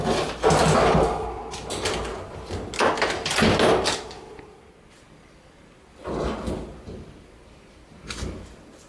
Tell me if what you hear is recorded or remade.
recorded